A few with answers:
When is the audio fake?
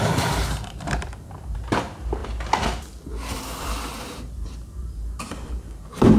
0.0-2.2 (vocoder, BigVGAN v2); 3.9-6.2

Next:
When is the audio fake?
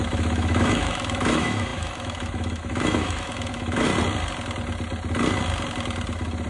0.0-3.9 (autoencoder, DAC-VAE)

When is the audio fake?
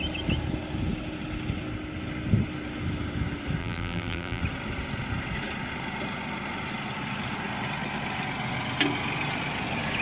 3.6-4.4 (vocoder, BigVGAN v2)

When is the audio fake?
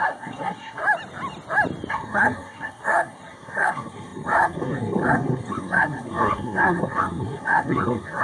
0.0-0.8 (codec, SNAC); 1.9-8.2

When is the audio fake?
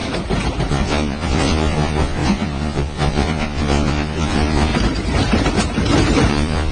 0.7-4.7 (vocoder, Vocos); 6.3-6.7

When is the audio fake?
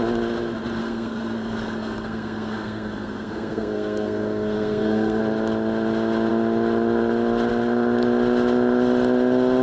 0.8-5.2 (codec, SNAC)